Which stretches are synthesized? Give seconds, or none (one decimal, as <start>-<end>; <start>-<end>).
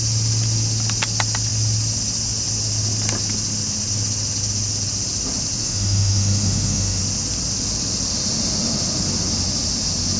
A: 5.6-7.0